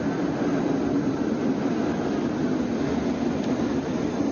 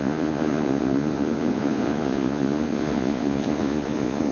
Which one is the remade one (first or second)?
second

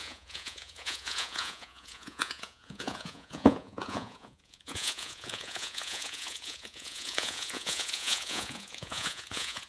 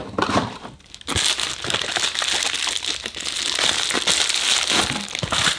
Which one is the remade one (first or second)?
first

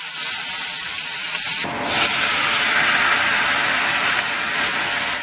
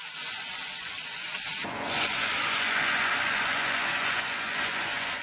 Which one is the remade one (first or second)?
second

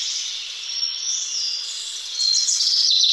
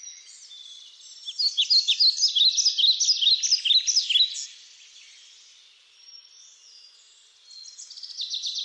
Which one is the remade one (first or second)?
first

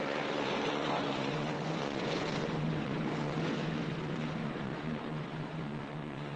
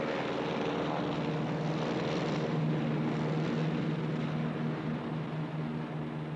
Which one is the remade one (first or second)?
first